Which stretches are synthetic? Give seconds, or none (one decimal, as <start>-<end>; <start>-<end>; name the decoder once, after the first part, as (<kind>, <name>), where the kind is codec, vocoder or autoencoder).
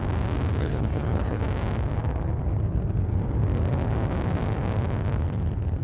0.6-1.4 (codec, HILCodec)